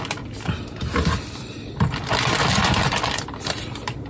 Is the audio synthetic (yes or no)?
no